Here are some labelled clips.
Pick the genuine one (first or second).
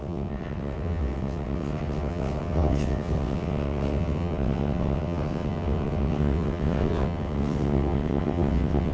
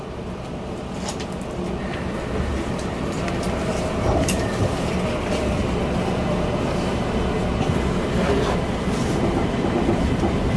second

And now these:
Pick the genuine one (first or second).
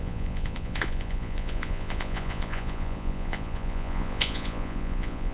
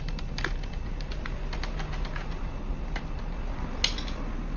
second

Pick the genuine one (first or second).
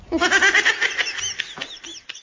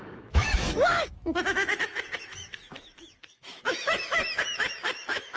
first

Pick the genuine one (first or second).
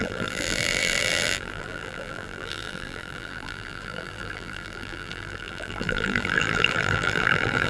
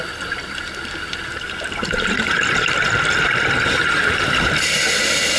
second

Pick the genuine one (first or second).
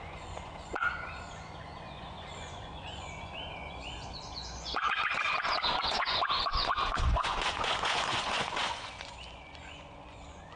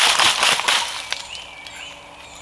second